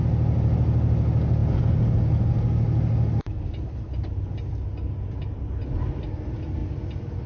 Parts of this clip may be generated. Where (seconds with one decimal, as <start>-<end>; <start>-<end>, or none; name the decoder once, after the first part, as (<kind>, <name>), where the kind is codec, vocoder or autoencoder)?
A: none